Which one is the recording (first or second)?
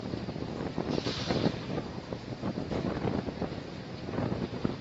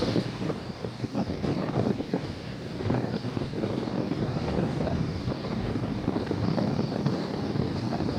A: first